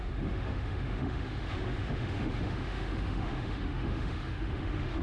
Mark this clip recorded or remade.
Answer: remade